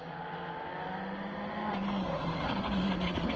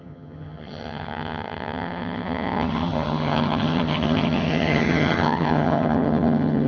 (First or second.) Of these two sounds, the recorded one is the first